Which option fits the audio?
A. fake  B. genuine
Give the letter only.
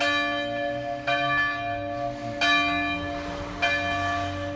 B